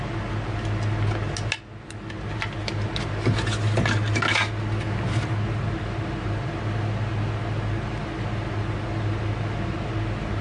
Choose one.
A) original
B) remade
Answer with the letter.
A